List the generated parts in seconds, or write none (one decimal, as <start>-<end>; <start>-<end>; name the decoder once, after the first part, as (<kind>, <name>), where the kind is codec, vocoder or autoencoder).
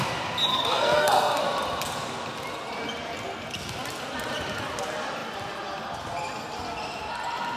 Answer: 0.5-1.4 (codec, SNAC)